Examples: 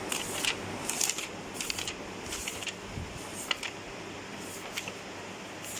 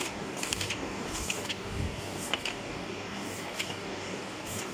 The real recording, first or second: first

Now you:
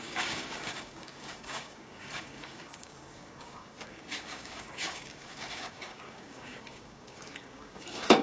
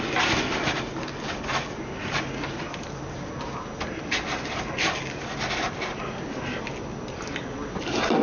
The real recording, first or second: second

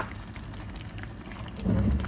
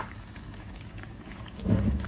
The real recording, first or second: first